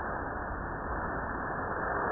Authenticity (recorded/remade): recorded